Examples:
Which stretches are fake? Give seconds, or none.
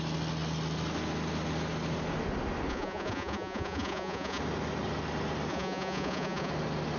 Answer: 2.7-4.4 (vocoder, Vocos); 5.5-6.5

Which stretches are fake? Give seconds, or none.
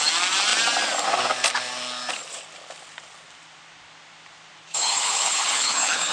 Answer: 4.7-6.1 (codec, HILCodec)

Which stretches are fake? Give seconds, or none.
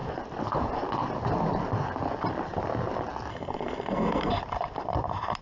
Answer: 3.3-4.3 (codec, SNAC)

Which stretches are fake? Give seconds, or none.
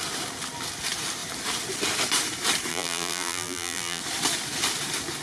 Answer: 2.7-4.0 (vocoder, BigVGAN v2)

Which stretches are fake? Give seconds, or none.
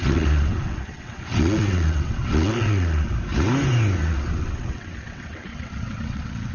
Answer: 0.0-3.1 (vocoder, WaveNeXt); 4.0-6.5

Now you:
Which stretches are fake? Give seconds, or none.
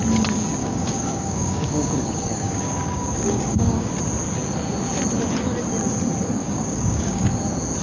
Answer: 0.6-3.9 (codec, DAC); 6.4-7.3